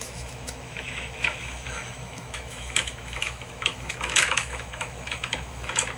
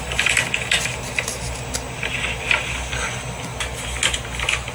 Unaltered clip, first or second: second